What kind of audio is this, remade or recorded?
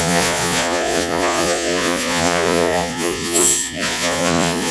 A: remade